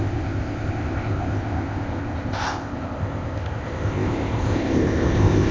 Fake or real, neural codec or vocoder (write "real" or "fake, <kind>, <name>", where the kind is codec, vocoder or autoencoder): fake, codec, ZipCodec